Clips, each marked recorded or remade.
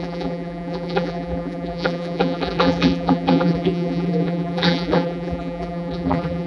remade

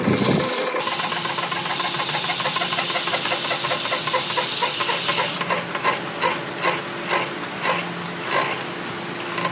recorded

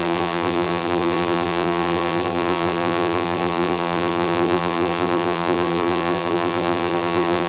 remade